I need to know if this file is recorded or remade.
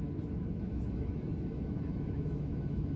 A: remade